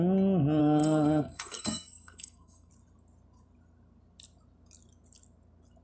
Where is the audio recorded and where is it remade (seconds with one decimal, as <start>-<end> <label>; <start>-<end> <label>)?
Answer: 0.0-0.6 recorded; 0.6-2.7 remade; 2.7-5.8 recorded